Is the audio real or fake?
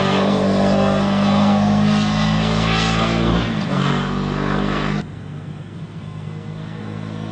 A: fake